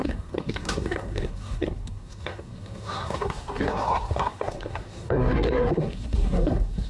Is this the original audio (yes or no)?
no